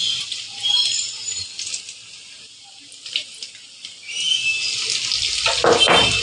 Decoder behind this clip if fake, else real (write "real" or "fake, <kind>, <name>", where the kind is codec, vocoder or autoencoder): real